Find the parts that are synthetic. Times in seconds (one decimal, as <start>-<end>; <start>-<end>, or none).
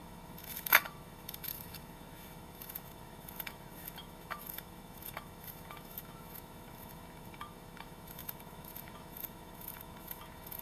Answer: 0.0-10.6